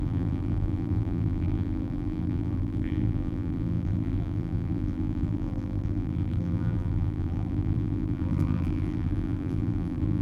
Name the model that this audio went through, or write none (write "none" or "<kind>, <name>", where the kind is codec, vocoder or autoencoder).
vocoder, BigVGAN v2